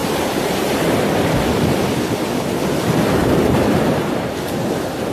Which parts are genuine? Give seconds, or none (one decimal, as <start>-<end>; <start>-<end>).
0.9-3.2; 3.8-5.1